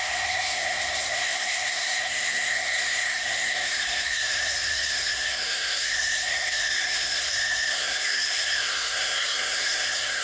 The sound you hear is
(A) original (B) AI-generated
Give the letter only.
B